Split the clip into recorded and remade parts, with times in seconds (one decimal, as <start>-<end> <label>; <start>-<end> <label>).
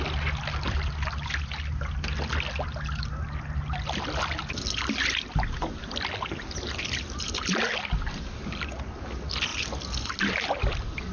0.0-11.1 recorded